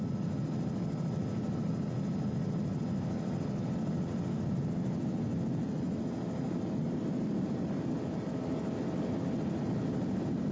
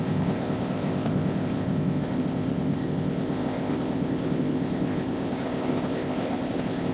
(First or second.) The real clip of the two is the first